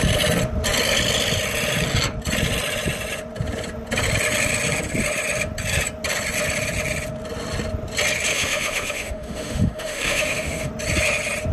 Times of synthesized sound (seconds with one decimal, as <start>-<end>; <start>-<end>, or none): 8.3-10.7